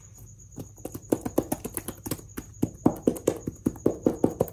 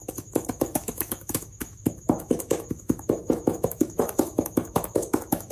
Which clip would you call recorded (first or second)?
first